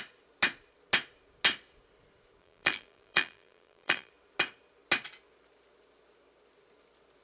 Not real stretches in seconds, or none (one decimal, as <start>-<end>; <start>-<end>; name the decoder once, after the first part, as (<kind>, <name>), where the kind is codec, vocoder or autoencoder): 2.4-4.1 (vocoder, BigVGAN v2)

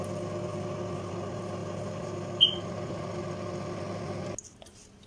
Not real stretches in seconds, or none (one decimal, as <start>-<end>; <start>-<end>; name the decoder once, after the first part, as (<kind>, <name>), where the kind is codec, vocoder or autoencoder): 1.6-3.8 (vocoder, BigVGAN v2)